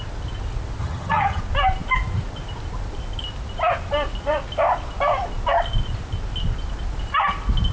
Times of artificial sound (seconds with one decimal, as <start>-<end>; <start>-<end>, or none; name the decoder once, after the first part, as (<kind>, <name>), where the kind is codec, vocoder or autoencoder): 0.8-1.4 (vocoder, HiFi-GAN)